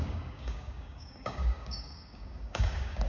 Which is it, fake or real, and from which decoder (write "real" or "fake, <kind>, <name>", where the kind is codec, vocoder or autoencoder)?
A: fake, codec, DAC